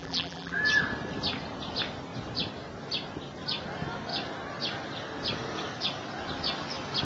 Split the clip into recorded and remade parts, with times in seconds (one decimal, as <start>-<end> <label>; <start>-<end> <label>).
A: 0.0-0.6 remade; 0.6-7.0 recorded